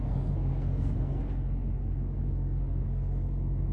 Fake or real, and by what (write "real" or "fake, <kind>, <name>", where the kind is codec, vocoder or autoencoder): fake, codec, SNAC